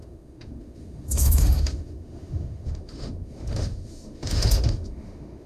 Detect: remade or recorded remade